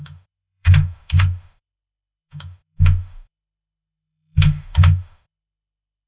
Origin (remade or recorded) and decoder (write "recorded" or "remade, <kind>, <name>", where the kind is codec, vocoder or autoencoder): remade, autoencoder, DAC-VAE